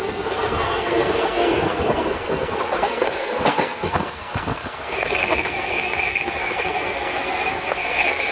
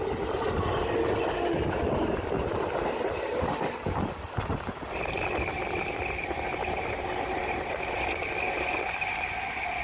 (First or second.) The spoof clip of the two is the first